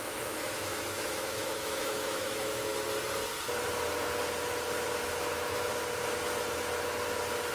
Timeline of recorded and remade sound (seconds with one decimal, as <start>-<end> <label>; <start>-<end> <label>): 0.0-2.7 remade; 2.7-5.0 recorded; 5.0-5.7 remade; 5.7-7.5 recorded